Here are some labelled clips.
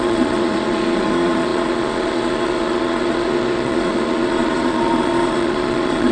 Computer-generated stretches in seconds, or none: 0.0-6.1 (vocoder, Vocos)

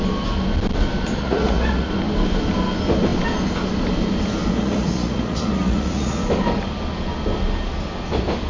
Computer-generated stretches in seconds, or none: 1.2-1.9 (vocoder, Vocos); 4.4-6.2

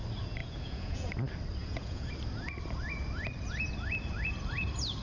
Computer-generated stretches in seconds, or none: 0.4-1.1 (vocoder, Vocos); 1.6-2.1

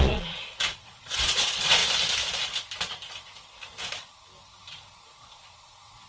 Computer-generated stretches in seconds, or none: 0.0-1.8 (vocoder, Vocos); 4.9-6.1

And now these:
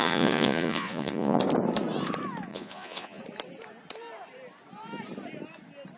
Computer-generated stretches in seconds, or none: 0.0-1.4 (vocoder, Vocos); 2.5-3.2

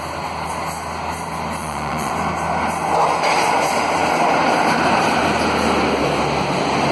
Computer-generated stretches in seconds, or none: 1.6-2.1 (vocoder, Vocos)

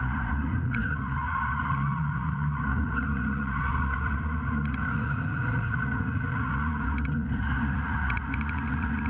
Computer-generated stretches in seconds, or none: 0.0-9.1 (vocoder, Vocos)